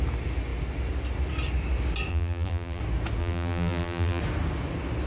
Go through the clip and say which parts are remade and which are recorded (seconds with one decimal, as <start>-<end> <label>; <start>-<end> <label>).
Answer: 0.0-2.1 recorded; 2.1-2.8 remade; 2.8-3.2 recorded; 3.2-4.2 remade; 4.2-5.1 recorded